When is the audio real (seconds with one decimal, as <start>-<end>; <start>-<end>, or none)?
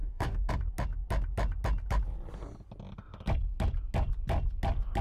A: 0.5-5.0